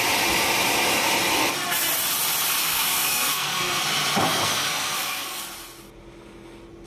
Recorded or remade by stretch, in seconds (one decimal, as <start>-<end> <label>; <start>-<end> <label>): 0.0-2.6 recorded; 2.6-3.8 remade; 3.8-4.3 recorded; 4.3-5.4 remade; 5.4-6.9 recorded